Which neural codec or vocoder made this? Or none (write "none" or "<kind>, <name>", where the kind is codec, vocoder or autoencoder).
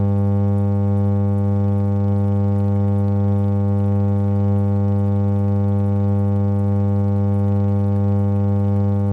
none